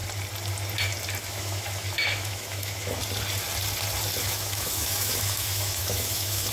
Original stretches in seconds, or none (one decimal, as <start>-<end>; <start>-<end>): 0.0-1.3; 3.0-4.2